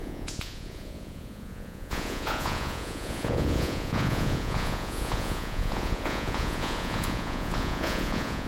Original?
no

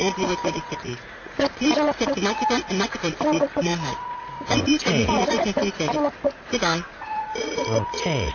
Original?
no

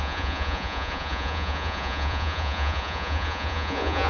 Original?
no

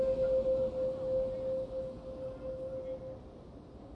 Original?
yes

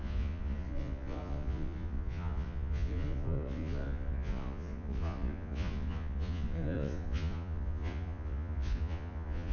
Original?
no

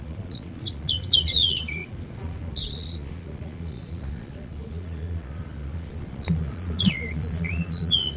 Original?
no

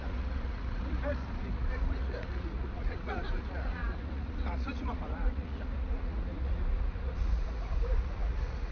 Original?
no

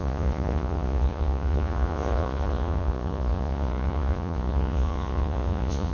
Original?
no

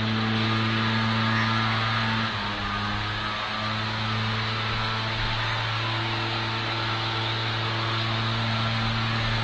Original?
yes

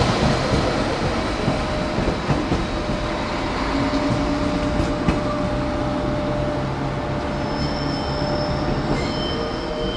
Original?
yes